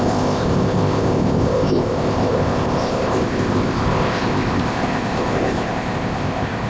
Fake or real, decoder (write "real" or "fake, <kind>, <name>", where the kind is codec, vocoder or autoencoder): fake, codec, ZipCodec